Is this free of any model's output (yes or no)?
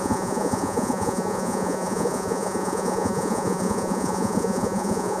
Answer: no